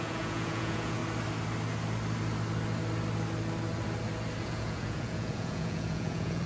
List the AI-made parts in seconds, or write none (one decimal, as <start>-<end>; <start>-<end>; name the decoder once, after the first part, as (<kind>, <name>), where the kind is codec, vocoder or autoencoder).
0.0-1.0 (vocoder, Vocos); 4.4-6.5